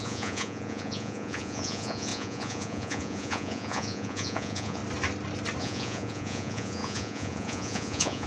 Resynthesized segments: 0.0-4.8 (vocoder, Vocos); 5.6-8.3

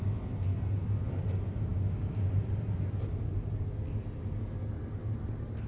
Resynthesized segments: 1.7-2.3 (codec, DAC)